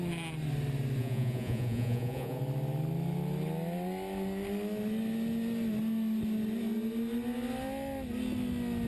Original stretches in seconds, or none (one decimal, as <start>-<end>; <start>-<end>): 0.0-1.0; 2.4-8.9